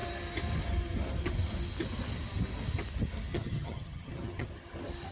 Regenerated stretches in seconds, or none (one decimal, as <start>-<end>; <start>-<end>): 3.3-4.5

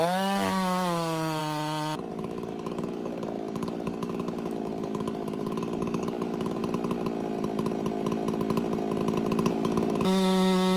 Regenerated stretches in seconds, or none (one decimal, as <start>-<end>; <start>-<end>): 0.0-1.4; 2.1-6.6; 9.5-10.8

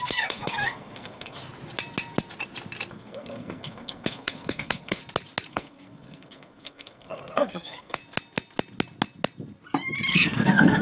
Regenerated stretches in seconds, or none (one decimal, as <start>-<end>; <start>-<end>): 0.0-1.4; 2.9-5.0; 5.5-8.0; 10.1-10.8

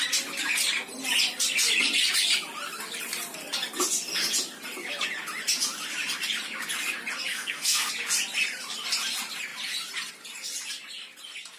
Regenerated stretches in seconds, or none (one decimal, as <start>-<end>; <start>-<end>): 7.3-7.9

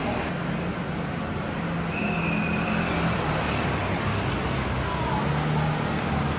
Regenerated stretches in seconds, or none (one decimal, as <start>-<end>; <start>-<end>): none

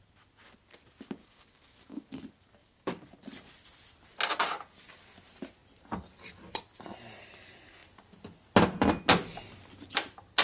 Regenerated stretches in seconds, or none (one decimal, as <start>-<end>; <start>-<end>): 1.2-2.1; 2.6-3.1